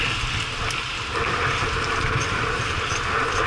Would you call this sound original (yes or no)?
yes